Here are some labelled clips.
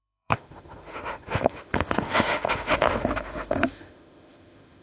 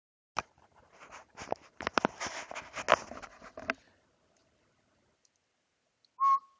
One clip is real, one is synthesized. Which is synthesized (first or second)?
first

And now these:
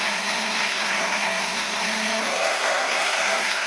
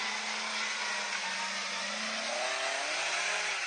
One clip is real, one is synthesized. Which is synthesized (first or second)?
first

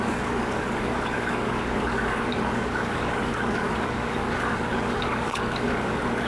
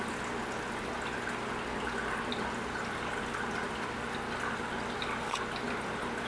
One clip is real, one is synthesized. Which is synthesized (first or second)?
first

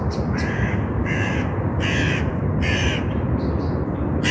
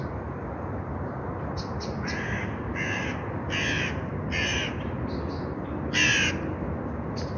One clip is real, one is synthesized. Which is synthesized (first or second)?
first